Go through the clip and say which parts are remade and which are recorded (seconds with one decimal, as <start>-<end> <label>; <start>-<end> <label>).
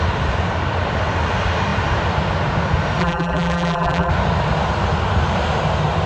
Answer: 0.0-3.0 recorded; 3.0-4.1 remade; 4.1-6.1 recorded